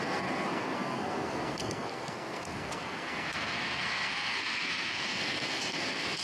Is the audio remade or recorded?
remade